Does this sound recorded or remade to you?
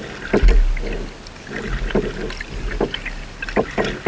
recorded